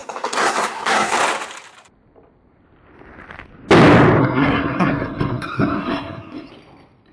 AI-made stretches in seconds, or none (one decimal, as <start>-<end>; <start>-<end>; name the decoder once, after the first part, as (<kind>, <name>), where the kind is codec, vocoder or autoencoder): 0.0-1.2 (codec, SNAC); 4.2-6.5